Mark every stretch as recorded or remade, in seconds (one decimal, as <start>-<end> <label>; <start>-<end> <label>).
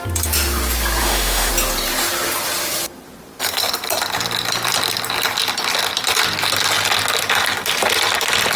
0.0-1.0 recorded; 1.0-1.5 remade; 1.5-8.6 recorded